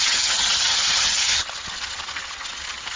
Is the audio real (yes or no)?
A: no